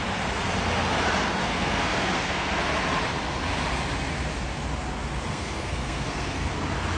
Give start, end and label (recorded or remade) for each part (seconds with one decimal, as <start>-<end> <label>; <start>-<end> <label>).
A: 0.0-1.4 recorded; 1.4-2.6 remade; 2.6-5.3 recorded; 5.3-6.5 remade; 6.5-7.0 recorded